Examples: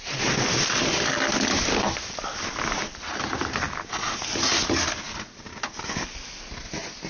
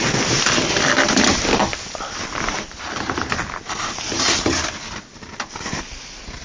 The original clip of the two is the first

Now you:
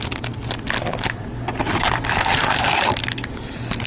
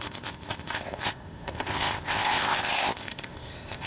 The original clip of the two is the first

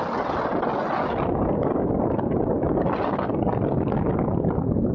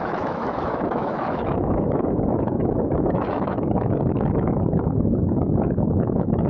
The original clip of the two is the first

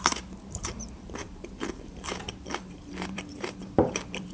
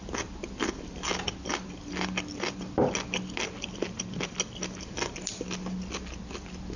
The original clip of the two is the second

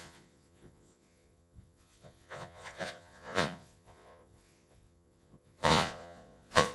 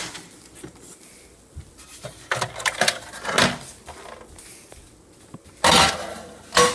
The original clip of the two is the second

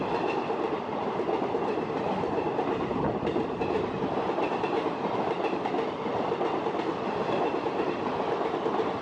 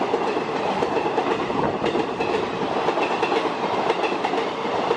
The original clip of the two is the second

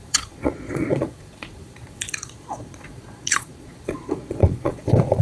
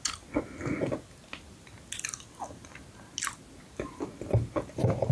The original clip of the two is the second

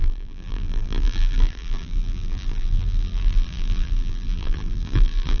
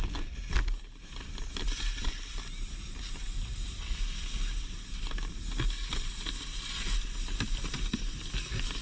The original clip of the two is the second